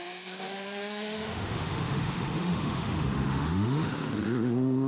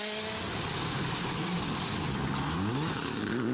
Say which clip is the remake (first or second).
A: first